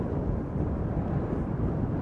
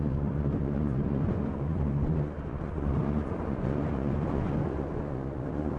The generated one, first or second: second